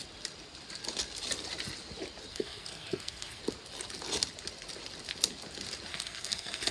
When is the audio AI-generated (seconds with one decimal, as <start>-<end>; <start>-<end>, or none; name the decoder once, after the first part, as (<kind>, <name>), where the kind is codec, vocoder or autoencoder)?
2.3-3.4 (codec, SNAC); 5.9-6.7